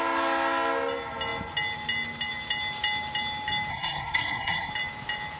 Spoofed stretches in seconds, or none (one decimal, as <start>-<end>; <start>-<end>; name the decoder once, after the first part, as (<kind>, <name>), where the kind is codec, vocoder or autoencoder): 3.7-4.7 (codec, SNAC)